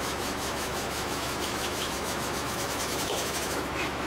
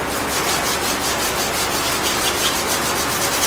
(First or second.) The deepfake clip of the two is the first